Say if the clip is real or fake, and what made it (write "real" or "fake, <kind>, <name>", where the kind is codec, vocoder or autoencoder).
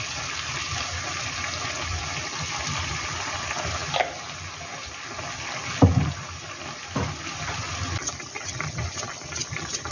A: real